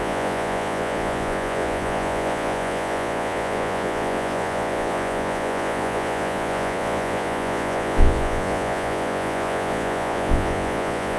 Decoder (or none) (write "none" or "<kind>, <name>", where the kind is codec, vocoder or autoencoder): vocoder, Vocos